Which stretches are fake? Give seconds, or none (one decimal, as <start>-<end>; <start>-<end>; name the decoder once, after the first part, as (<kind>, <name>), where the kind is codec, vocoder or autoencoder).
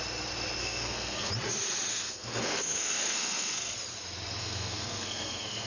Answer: 0.6-1.3 (codec, SNAC); 1.9-3.7; 4.4-5.7